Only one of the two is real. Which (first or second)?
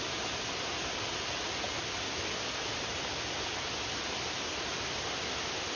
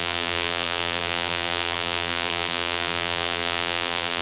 first